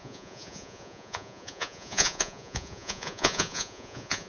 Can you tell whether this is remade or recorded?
remade